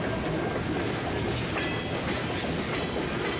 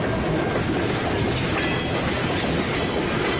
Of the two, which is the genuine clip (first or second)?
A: first